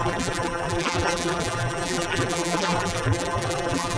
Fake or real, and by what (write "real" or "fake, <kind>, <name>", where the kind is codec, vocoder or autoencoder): fake, vocoder, BigVGAN v2